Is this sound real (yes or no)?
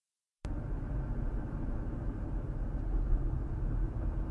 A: yes